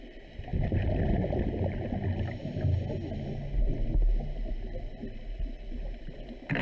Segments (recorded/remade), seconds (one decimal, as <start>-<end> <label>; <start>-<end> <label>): 0.0-6.6 recorded